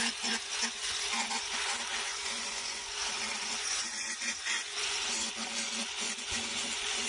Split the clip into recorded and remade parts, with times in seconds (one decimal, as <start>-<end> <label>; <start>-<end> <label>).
0.0-7.1 remade